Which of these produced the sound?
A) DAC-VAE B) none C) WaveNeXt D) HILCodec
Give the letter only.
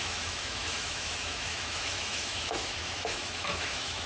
A